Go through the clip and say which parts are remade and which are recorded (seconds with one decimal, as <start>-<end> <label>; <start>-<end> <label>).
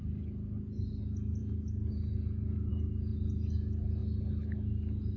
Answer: 0.0-5.2 recorded